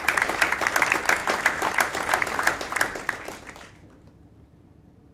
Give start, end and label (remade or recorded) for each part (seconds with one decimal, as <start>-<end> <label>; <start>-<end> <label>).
0.0-5.1 remade